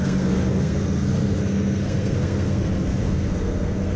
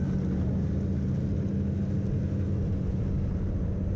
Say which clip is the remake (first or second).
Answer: first